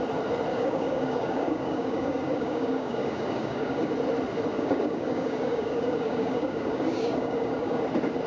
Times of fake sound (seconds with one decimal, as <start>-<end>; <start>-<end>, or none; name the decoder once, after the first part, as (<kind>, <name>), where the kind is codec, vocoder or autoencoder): 0.5-3.9 (codec, DAC); 4.5-7.8